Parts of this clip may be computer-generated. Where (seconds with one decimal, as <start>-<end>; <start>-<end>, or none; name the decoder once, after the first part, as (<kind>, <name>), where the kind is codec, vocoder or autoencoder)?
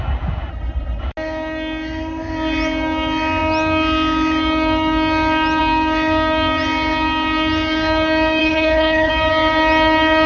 0.5-1.0 (codec, HILCodec); 8.4-9.1